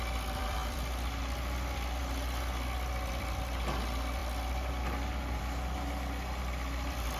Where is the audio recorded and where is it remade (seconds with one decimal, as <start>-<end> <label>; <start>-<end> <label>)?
0.0-2.0 remade; 2.0-3.1 recorded; 3.1-7.2 remade